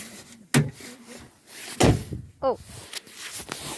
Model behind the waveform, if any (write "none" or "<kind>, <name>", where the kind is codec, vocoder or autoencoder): none